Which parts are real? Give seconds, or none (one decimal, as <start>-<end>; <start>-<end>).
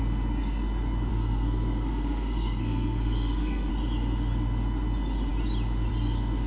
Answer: 0.0-1.1; 3.7-6.5